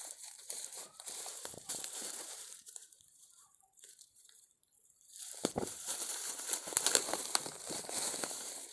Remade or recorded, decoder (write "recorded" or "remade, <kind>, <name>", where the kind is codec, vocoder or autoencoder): remade, vocoder, BigVGAN v2